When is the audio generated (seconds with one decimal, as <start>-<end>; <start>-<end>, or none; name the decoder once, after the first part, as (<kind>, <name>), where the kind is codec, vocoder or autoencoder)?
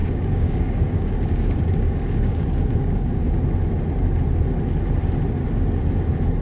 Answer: 0.0-3.4 (codec, DAC)